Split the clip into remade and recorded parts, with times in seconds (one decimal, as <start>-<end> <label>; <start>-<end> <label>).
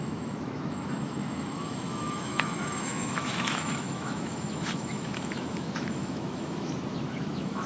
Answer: 0.0-7.7 remade